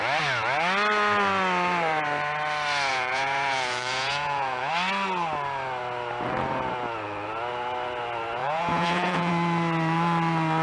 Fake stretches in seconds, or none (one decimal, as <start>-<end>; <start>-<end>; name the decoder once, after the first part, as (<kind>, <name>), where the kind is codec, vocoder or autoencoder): 2.9-4.7 (vocoder, Vocos); 8.4-9.3